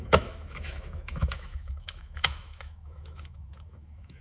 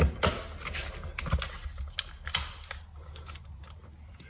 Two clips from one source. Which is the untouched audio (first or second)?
second